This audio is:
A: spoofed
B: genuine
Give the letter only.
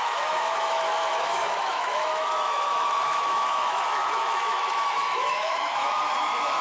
A